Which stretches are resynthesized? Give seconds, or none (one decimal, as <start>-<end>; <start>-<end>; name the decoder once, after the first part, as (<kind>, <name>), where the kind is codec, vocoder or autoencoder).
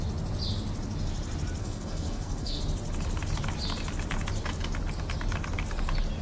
1.6-2.6 (codec, SNAC)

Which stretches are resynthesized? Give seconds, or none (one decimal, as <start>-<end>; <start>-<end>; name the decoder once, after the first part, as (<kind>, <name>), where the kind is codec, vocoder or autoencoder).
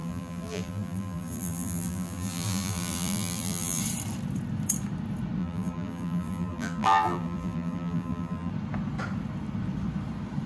0.0-3.8 (vocoder, BigVGAN v2); 5.4-8.5